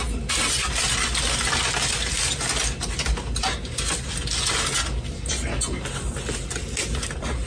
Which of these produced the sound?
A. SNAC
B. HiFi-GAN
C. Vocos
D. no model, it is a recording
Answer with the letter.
D